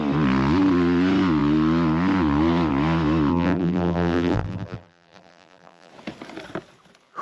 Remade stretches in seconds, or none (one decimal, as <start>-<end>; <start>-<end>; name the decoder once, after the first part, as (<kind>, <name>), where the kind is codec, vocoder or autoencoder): 3.3-5.9 (vocoder, BigVGAN v2)